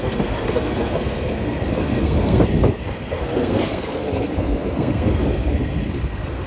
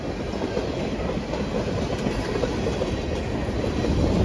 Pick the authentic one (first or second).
second